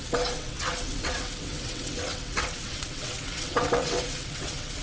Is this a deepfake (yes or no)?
yes